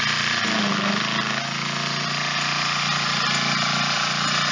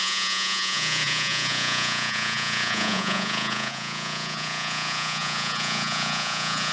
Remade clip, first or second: second